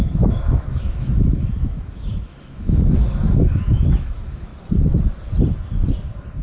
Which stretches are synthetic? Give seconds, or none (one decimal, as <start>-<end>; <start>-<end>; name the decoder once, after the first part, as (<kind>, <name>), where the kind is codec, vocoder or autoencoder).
0.0-4.5 (autoencoder, DAC-VAE)